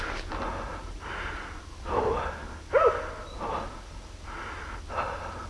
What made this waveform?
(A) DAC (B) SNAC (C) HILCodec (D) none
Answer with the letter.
D